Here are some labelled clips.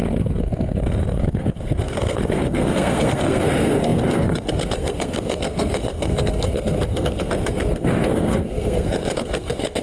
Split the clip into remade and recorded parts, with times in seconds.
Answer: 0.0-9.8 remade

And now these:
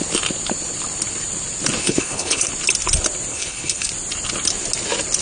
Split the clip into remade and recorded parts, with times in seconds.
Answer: 0.0-1.8 recorded; 1.8-2.5 remade; 2.5-3.3 recorded; 3.3-3.9 remade; 3.9-5.2 recorded

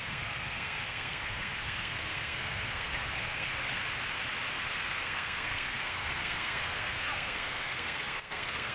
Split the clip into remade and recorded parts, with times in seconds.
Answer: 0.0-3.8 remade; 3.8-4.5 recorded; 4.5-8.7 remade

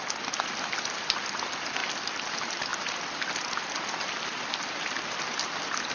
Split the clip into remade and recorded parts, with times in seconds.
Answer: 0.0-5.9 recorded

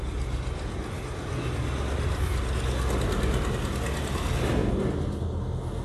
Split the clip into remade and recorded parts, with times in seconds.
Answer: 0.0-5.8 recorded